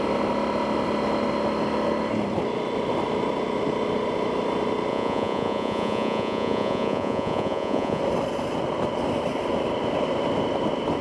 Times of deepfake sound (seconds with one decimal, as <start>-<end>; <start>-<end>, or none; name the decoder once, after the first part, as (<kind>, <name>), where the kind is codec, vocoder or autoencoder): 4.9-8.0 (vocoder, Vocos)